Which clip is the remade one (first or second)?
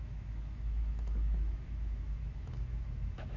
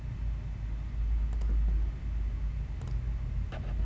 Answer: first